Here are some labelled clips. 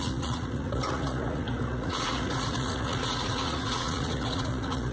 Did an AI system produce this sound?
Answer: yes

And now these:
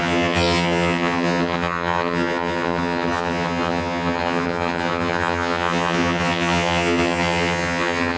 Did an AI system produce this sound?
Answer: yes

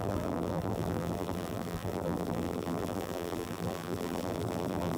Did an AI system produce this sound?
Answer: yes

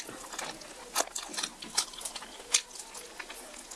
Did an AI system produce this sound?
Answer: no